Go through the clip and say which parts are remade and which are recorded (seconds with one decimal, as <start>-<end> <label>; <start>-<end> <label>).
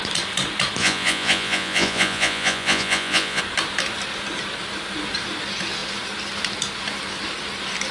0.0-0.8 recorded; 0.8-3.4 remade; 3.4-7.9 recorded